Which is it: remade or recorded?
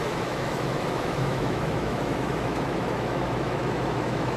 remade